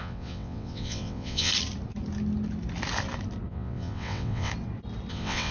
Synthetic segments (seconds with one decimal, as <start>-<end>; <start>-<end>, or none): 0.0-1.5; 3.5-4.5; 5.1-5.5